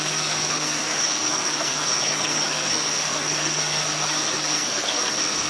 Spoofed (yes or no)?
yes